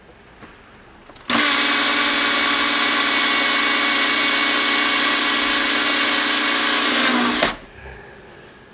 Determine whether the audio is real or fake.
real